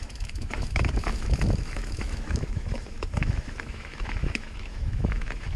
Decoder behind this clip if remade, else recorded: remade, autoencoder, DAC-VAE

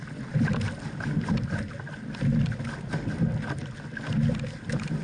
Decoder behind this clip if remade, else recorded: recorded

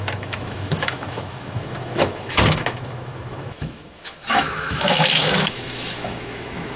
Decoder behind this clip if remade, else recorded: remade, autoencoder, DAC-VAE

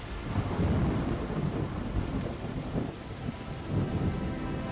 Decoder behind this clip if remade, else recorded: recorded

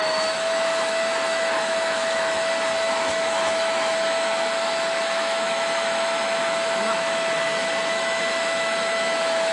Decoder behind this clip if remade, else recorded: remade, autoencoder, DAC-VAE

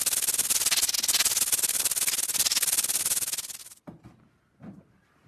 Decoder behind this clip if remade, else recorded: recorded